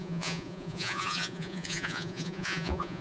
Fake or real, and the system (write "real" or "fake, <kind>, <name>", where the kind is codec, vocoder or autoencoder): fake, vocoder, Vocos